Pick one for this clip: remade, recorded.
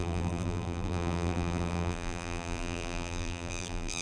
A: remade